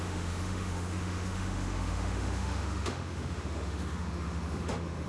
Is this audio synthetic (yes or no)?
yes